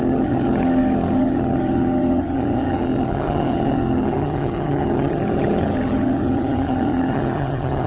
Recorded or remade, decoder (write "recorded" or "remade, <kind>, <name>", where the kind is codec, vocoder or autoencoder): remade, vocoder, HiFi-GAN